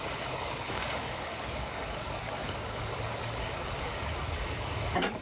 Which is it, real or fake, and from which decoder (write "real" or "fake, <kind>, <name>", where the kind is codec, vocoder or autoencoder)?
fake, codec, DAC